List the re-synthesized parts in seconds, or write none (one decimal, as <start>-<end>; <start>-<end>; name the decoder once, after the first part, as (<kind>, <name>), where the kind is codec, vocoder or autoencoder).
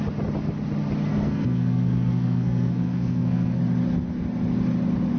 1.1-3.6 (codec, SNAC)